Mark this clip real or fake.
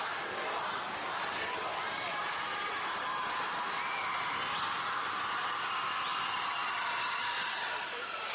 fake